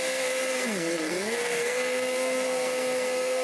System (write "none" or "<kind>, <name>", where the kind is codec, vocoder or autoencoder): codec, SNAC